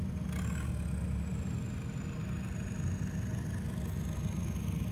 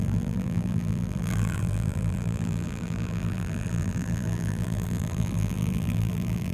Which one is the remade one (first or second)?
second